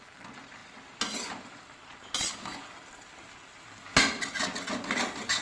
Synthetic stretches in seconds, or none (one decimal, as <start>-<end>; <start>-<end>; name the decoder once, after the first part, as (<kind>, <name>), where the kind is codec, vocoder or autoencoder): none